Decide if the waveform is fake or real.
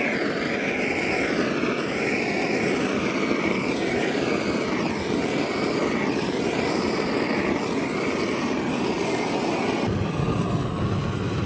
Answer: real